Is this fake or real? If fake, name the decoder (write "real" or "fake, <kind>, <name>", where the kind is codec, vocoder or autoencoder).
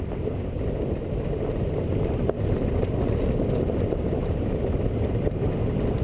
real